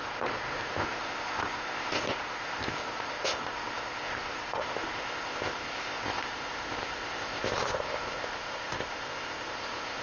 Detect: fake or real fake